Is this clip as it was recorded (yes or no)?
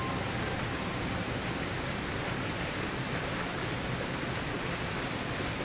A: yes